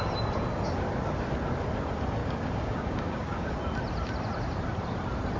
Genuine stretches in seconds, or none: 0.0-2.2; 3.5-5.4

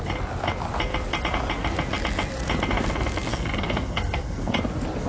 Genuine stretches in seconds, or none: 0.0-3.3; 4.5-5.1